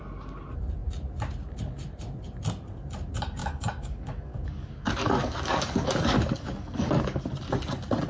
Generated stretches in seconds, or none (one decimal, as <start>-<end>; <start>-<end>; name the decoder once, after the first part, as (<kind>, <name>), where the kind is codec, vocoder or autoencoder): 3.4-7.2 (codec, DAC)